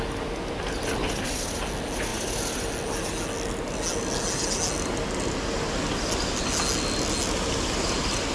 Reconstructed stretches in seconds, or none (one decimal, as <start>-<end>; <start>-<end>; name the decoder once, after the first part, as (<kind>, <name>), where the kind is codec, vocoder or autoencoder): none